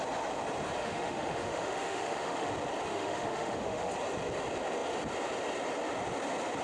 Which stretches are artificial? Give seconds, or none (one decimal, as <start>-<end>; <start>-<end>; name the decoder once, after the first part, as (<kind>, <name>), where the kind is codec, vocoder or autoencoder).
0.8-2.5 (autoencoder, DAC-VAE); 2.9-3.9